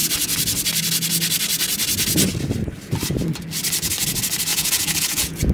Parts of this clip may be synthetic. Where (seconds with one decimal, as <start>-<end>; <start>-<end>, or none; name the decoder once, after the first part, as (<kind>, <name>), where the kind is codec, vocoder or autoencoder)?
4.5-5.5 (vocoder, Vocos)